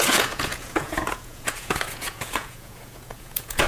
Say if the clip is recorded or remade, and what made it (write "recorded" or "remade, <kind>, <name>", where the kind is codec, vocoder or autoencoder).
remade, vocoder, Vocos